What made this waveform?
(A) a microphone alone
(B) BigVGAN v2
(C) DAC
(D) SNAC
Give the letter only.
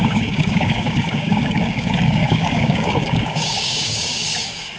C